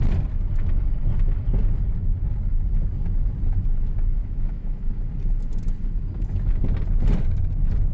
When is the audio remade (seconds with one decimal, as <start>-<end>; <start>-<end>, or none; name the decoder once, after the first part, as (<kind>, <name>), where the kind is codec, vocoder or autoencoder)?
4.2-4.9 (autoencoder, DAC-VAE)